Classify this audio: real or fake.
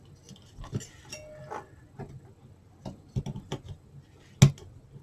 real